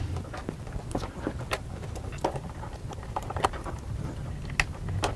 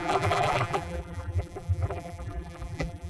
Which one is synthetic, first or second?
second